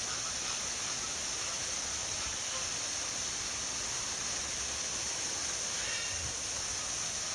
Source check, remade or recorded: recorded